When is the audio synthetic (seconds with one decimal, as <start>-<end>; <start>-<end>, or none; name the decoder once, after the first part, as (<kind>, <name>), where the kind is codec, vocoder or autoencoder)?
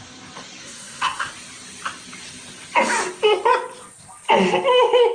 0.6-1.3 (codec, SNAC)